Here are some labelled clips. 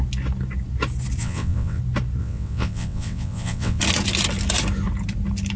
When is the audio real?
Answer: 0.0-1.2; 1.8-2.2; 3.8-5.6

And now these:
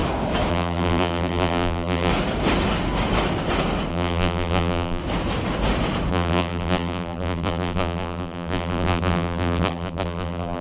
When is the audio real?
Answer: 0.0-0.5; 2.1-3.9; 5.0-6.1

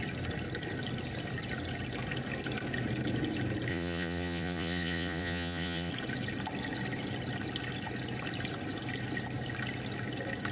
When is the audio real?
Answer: 0.0-3.7; 5.9-10.5

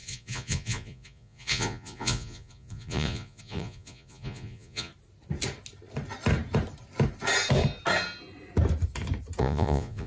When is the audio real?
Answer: 4.9-9.4

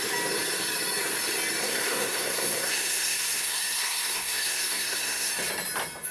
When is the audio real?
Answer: 0.0-1.6; 5.3-6.1